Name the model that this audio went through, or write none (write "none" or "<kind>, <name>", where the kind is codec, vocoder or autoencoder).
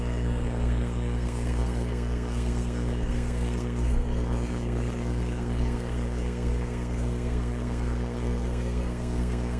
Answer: codec, SNAC